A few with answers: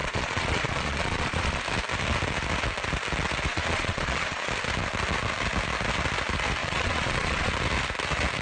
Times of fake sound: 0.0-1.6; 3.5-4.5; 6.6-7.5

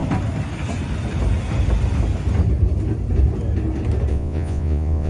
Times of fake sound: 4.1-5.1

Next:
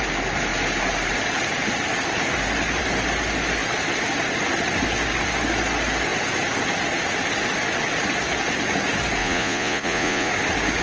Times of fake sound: 9.2-10.3

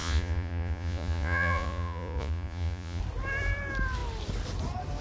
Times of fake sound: 0.0-3.0

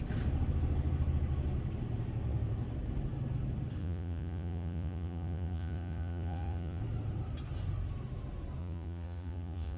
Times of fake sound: 3.8-6.8; 8.6-9.8

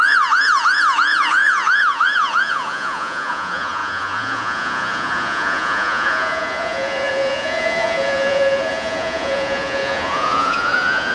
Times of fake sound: 0.0-11.1